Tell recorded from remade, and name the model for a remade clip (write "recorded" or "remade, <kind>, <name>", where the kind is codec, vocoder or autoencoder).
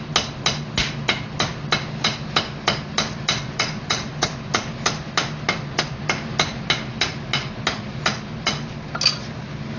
recorded